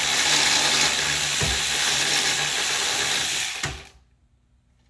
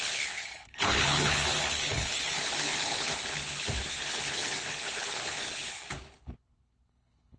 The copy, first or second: second